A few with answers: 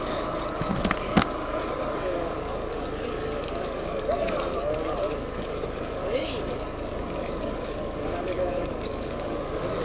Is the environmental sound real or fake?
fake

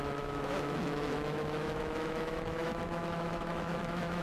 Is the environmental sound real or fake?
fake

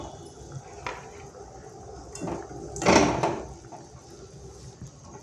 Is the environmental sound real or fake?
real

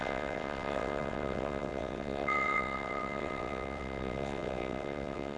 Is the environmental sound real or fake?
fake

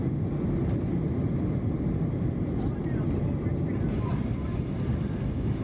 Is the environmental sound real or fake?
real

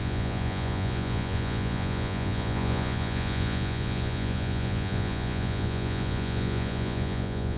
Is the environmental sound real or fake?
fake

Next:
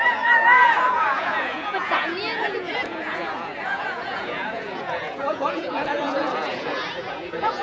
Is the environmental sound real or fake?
fake